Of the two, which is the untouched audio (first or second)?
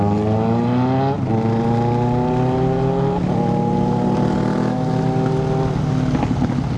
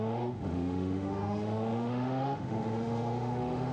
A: first